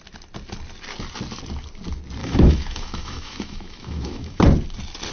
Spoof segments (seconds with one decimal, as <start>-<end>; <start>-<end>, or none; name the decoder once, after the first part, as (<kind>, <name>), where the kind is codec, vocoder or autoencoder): 2.2-4.4 (autoencoder, DAC-VAE)

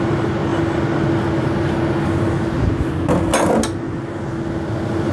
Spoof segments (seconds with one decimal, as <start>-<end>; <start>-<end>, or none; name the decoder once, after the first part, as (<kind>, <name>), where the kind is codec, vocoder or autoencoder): none